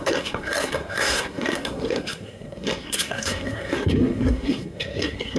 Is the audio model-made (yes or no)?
yes